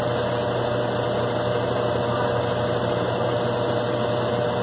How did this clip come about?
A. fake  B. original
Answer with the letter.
B